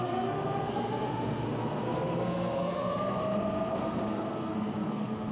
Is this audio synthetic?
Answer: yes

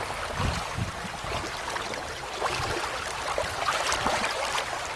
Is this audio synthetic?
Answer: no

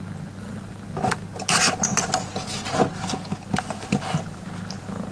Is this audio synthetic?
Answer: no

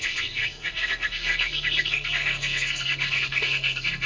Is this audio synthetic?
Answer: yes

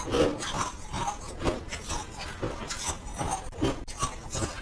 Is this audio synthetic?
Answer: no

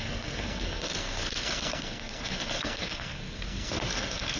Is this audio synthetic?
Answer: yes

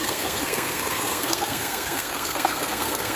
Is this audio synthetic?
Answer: yes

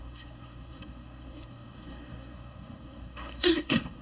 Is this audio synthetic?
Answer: yes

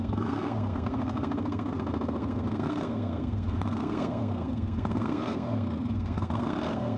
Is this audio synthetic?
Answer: yes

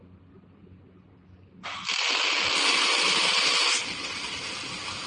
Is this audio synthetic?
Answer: no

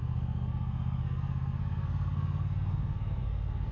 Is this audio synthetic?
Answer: yes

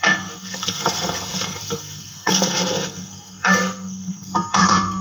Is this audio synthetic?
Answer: yes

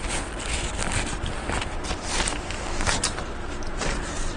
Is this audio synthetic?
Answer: no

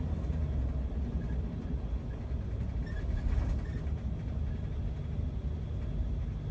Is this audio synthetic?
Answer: no